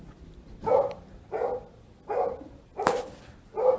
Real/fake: real